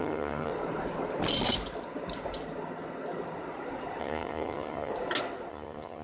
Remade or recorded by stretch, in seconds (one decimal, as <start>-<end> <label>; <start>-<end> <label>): 0.0-0.5 remade; 0.5-4.0 recorded; 4.0-4.9 remade; 4.9-5.5 recorded; 5.5-6.0 remade